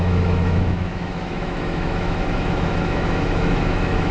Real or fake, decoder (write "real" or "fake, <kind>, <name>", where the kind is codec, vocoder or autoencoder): fake, autoencoder, DAC-VAE